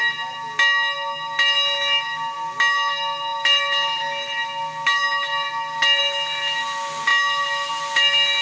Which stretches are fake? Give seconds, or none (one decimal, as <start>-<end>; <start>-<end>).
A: none